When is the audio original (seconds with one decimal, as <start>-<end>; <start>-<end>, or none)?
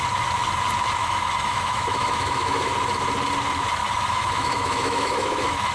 0.0-1.0; 2.7-3.8